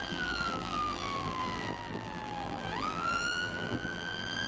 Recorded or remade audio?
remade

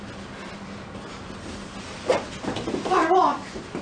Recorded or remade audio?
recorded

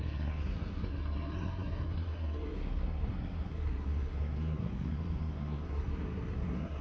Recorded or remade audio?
remade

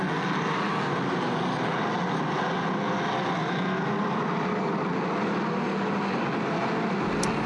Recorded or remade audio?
recorded